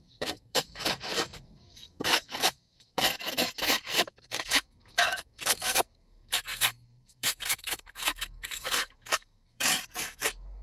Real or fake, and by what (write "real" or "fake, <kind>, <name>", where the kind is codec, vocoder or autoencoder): fake, codec, SNAC